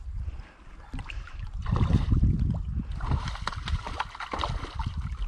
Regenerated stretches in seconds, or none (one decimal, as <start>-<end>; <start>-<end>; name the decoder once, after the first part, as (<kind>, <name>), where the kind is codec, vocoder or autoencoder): 1.6-4.8 (vocoder, BigVGAN v2)